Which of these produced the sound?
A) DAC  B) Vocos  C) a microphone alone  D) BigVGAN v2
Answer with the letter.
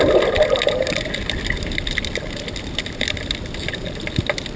C